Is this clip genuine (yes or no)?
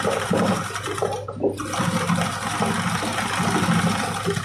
yes